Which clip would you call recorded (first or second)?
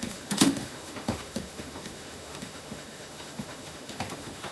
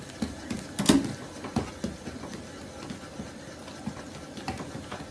second